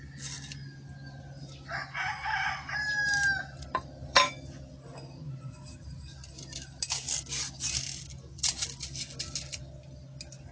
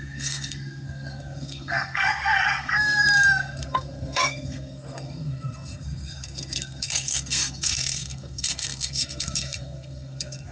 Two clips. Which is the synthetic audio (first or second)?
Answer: second